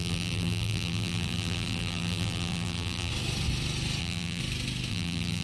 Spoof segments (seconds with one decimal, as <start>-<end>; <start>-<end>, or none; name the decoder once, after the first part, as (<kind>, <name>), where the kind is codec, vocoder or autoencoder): 0.0-3.1 (vocoder, BigVGAN v2); 4.0-4.4; 4.9-5.4